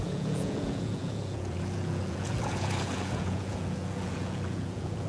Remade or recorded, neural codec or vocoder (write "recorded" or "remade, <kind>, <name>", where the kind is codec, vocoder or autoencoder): remade, vocoder, Vocos